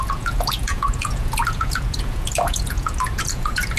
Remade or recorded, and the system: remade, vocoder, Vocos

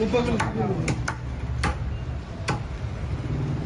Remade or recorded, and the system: recorded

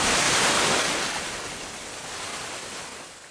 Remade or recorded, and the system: recorded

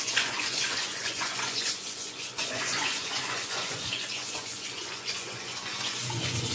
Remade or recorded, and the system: remade, vocoder, Vocos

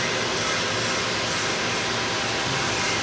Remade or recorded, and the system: recorded